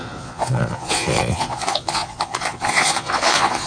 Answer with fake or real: fake